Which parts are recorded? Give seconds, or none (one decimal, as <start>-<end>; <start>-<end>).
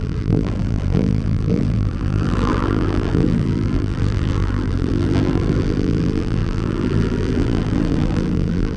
none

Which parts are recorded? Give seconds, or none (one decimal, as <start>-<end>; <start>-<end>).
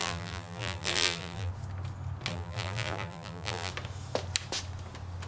1.5-2.3; 3.7-5.3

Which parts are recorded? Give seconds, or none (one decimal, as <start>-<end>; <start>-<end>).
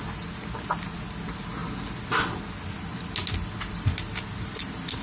0.0-5.0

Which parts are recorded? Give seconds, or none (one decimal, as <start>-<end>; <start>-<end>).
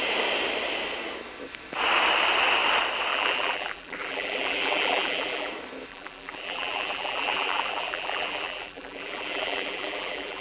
0.0-3.1; 5.5-5.9